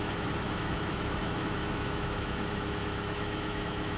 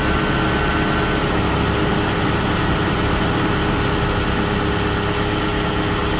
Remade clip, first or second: first